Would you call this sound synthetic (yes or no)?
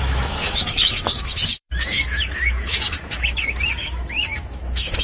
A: yes